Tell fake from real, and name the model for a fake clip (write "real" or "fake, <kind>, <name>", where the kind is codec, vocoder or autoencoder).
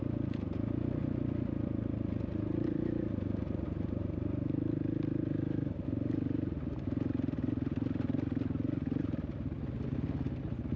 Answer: real